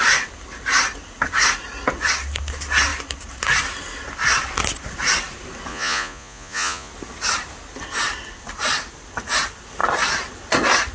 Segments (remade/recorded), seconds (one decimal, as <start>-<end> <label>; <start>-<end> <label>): 0.0-5.7 recorded; 5.7-6.9 remade; 6.9-10.9 recorded